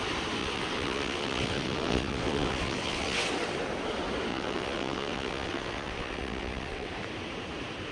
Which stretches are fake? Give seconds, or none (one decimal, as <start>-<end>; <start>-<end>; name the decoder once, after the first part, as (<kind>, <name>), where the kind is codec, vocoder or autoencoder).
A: 0.4-3.3 (vocoder, WaveNeXt); 4.3-6.9